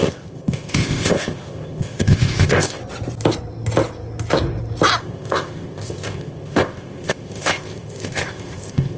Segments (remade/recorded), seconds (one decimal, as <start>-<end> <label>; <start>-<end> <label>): 0.0-2.8 remade; 2.8-5.0 recorded; 5.0-9.0 remade